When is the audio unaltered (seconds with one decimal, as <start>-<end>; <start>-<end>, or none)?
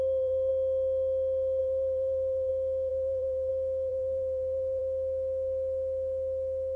0.5-1.6; 2.5-2.9; 3.5-3.9; 4.8-6.8